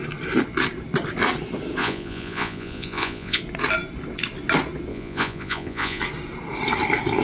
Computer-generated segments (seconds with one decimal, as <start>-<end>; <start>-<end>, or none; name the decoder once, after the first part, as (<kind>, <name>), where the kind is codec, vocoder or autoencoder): 1.8-3.4 (vocoder, Vocos); 4.9-6.0